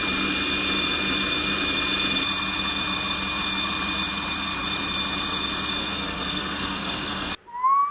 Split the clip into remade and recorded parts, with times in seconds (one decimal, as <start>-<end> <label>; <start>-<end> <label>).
0.0-5.8 recorded; 5.8-7.3 remade; 7.3-7.9 recorded